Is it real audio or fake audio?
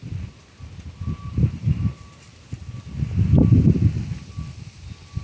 real